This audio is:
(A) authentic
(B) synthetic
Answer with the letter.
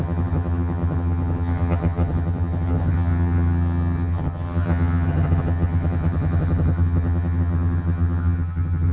B